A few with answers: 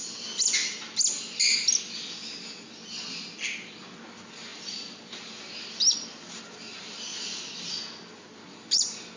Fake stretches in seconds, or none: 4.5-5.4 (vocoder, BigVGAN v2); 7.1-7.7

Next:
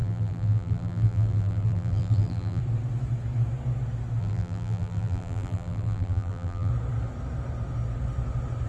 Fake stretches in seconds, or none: 0.0-2.6 (vocoder, BigVGAN v2); 4.2-6.7

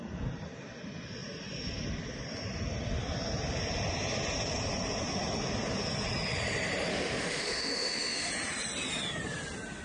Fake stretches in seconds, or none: 6.9-8.3 (autoencoder, DAC-VAE)

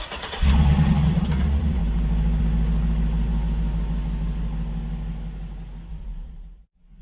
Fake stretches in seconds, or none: 0.0-1.8 (vocoder, Vocos); 5.9-7.0